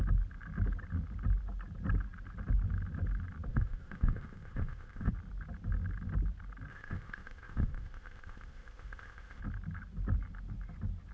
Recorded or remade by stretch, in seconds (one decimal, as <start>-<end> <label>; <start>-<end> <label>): 0.0-3.5 recorded; 3.5-5.1 remade; 5.1-6.7 recorded; 6.7-9.4 remade; 9.4-11.1 recorded